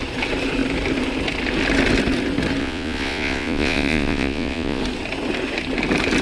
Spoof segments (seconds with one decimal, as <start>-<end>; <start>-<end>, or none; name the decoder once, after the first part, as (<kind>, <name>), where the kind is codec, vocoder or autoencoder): 2.6-4.8 (vocoder, Vocos)